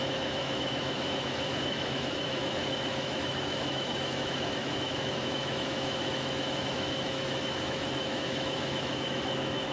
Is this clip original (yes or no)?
no